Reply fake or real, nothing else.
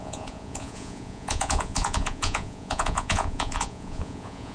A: fake